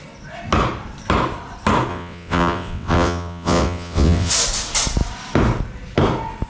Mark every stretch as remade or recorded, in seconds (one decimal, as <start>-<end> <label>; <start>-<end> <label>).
0.0-1.9 recorded; 1.9-4.3 remade; 4.3-6.5 recorded